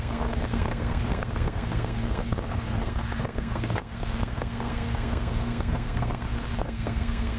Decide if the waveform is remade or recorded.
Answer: remade